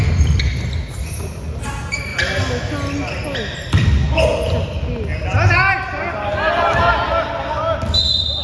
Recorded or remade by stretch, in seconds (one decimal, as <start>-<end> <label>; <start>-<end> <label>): 0.0-8.4 recorded